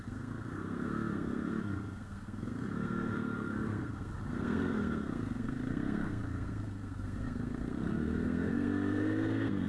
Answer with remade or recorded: remade